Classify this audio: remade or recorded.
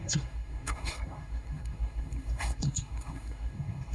remade